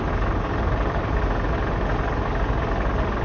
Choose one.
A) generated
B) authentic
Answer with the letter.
B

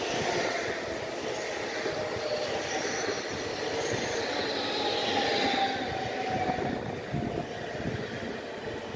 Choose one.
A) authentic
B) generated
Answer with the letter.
A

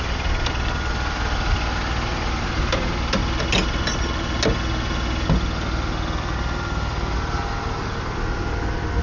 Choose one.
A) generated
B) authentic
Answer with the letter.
B